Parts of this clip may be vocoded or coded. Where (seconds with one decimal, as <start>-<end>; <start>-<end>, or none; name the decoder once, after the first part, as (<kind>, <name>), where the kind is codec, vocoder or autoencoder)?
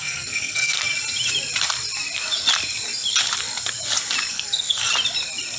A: 0.0-0.9 (codec, SNAC); 4.3-4.9